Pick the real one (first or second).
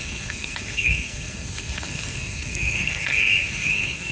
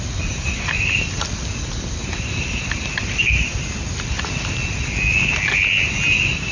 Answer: second